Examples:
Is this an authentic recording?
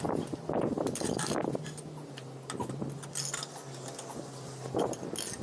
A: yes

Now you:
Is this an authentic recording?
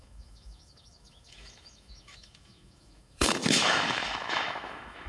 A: no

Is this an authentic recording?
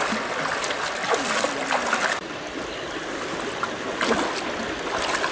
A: yes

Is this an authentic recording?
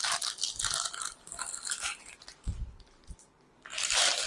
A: yes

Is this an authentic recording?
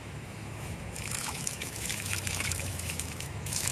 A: no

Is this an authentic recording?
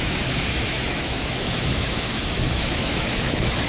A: no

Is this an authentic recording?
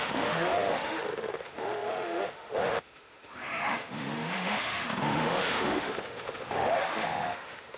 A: no